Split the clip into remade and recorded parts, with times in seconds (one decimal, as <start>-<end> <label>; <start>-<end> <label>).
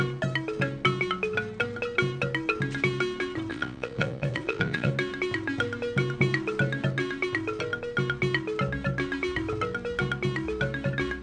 0.0-3.5 recorded; 3.5-4.9 remade; 4.9-11.2 recorded